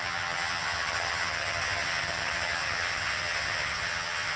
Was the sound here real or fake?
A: fake